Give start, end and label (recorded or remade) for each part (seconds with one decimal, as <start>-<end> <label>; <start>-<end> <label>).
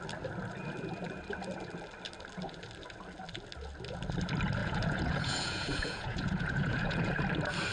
0.0-4.6 recorded; 4.6-7.2 remade; 7.2-7.7 recorded